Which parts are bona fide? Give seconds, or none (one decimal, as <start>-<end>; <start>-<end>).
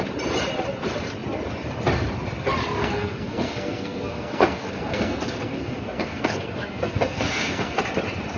0.0-2.8; 7.8-8.4